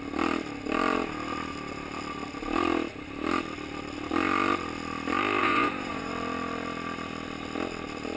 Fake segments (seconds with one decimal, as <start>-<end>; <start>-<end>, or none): 5.4-6.1